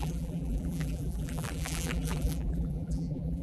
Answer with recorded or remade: remade